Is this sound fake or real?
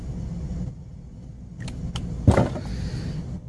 real